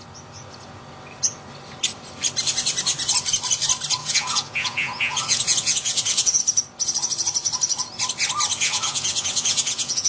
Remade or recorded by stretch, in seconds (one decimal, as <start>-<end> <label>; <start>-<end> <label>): 0.0-4.0 recorded; 4.0-6.4 remade; 6.4-8.5 recorded; 8.5-10.1 remade